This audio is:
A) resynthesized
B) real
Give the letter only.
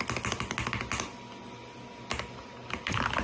B